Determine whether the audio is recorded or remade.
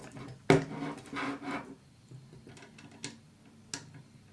recorded